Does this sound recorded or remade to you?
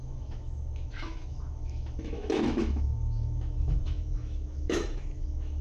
remade